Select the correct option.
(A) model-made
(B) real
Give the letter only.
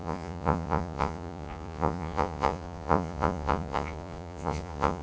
A